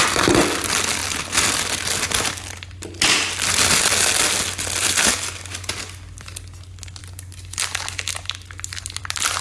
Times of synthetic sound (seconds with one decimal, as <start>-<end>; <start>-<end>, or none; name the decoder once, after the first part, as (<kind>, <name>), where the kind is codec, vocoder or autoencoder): 1.0-1.5 (vocoder, BigVGAN v2)